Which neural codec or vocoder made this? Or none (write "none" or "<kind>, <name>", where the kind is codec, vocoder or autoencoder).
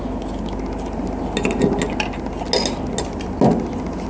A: none